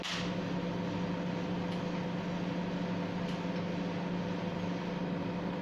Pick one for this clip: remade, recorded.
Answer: recorded